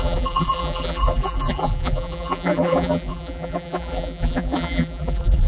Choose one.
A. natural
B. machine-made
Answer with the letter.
B